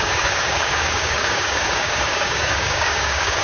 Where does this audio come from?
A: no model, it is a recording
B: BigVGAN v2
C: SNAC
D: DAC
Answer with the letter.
D